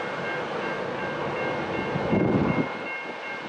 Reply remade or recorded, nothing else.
recorded